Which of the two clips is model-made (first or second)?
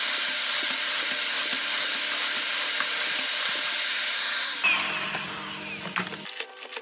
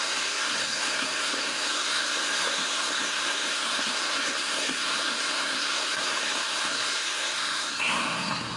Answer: second